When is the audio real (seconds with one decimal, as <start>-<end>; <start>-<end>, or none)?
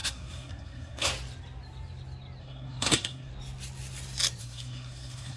1.1-2.4; 3.3-4.4